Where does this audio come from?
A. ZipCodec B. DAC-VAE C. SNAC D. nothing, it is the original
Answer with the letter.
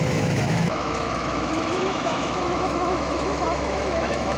B